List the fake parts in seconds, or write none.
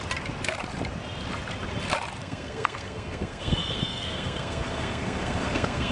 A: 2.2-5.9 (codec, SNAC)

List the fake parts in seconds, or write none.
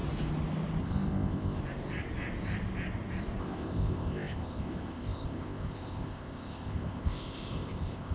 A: 0.8-1.6 (codec, ZipCodec); 3.4-8.1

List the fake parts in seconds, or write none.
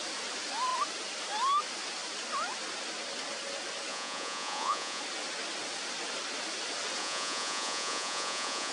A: 3.9-5.0 (vocoder, Vocos); 7.0-8.7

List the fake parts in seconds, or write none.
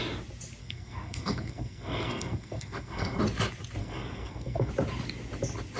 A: 0.6-3.2 (codec, SNAC); 3.8-4.7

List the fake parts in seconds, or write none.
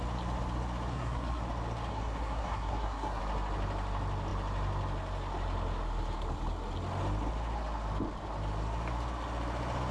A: 0.9-1.4 (codec, SNAC); 1.9-3.2